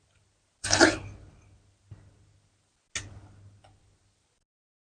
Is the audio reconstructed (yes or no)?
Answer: no